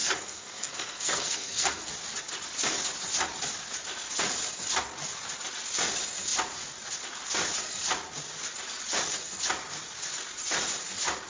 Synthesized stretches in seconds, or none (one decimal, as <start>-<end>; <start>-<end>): 0.0-1.9